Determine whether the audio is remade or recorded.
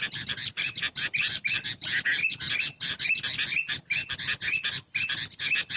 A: recorded